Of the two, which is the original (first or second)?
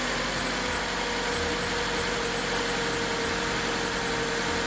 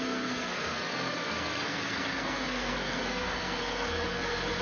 first